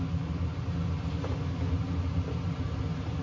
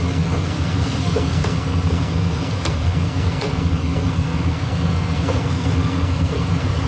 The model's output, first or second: second